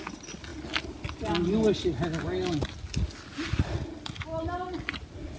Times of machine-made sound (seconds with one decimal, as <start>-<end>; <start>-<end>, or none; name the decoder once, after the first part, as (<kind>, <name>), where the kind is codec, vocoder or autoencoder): none